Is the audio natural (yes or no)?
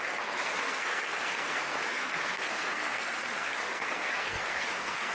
no